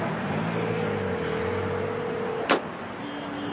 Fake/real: real